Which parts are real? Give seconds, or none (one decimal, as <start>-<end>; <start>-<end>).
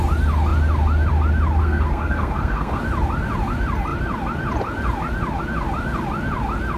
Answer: 0.0-1.6; 2.8-6.8